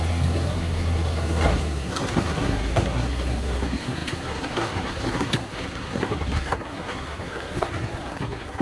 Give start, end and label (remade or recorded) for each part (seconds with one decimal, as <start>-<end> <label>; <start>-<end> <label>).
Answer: 0.0-8.6 remade